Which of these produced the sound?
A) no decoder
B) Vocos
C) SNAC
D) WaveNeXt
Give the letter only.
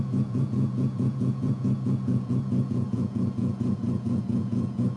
B